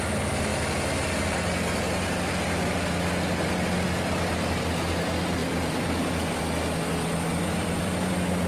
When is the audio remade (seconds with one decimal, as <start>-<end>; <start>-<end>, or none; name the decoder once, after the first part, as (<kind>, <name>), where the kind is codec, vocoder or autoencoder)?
5.4-6.4 (vocoder, BigVGAN v2); 7.3-8.1